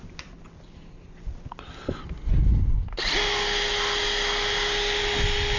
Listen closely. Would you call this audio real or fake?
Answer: real